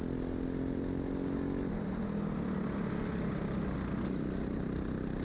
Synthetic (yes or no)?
no